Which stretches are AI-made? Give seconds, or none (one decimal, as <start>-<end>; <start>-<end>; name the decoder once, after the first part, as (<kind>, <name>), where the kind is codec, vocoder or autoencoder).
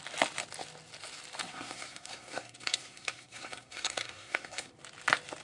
1.5-4.7 (codec, SNAC)